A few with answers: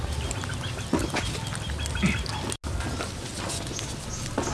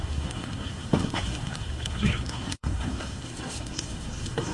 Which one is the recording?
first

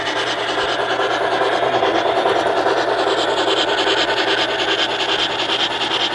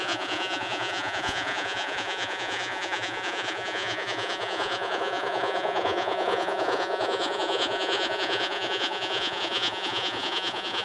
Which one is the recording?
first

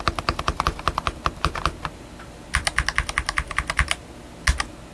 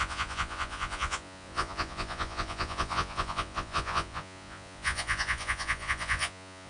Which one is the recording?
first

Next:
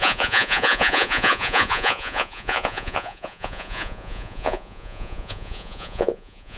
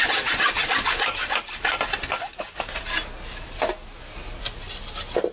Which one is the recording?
second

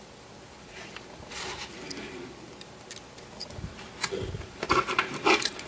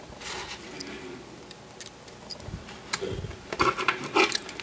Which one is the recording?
second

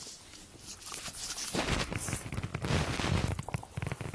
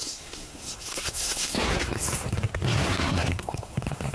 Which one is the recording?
first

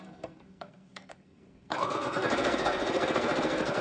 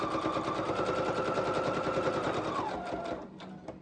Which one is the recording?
second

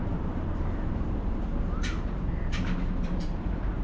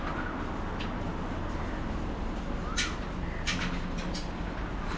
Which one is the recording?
second